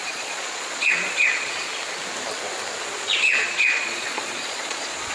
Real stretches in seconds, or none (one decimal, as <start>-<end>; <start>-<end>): 1.7-2.8